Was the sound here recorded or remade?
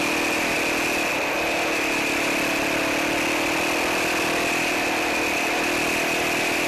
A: recorded